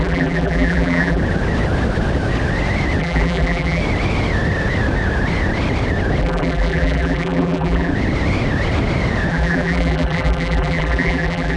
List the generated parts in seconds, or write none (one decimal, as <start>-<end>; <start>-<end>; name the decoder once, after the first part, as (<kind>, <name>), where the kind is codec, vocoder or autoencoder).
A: 0.0-1.2 (vocoder, BigVGAN v2); 3.0-3.8; 6.2-7.9; 9.3-11.6